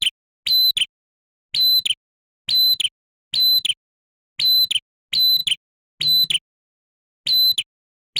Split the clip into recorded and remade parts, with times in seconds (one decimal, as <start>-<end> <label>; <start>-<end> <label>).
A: 0.0-8.2 recorded